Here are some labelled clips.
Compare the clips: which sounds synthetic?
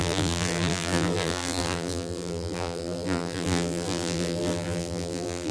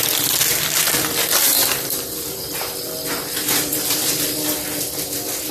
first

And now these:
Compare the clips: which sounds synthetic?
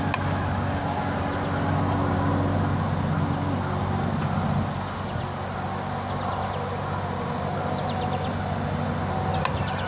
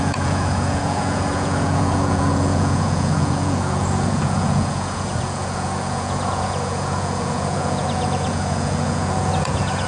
second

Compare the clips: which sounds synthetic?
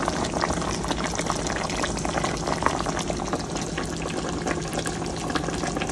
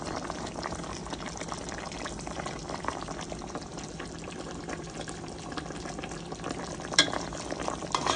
second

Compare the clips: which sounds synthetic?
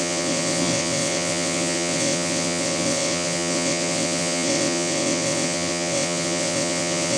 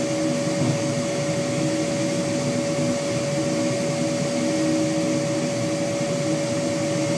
first